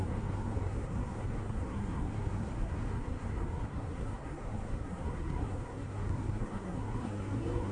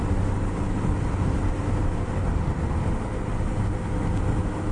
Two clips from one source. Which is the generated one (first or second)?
first